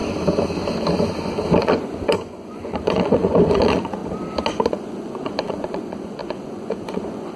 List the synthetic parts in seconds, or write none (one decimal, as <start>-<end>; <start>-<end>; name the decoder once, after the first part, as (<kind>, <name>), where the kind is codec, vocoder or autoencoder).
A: 1.6-4.0 (vocoder, Vocos); 4.7-7.4